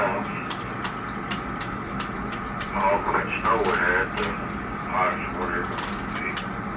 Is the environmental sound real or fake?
real